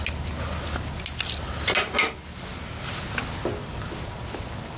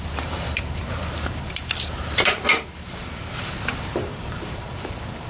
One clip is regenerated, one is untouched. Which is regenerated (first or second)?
second